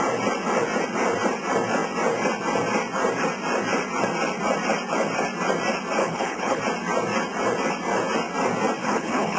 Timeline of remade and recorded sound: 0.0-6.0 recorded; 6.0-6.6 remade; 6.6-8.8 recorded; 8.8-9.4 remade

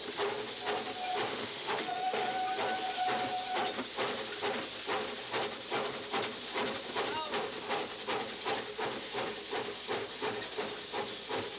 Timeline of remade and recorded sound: 0.0-1.3 recorded; 1.3-2.3 remade; 2.3-11.6 recorded

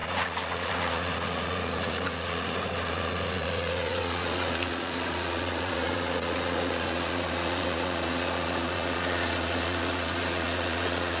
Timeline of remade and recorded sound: 0.0-11.2 remade

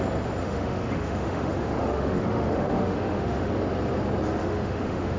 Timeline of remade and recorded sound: 0.0-0.4 recorded; 0.4-3.5 remade; 3.5-4.4 recorded; 4.4-5.2 remade